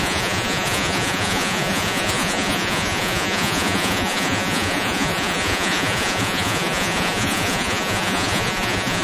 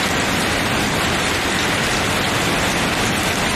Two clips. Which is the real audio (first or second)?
second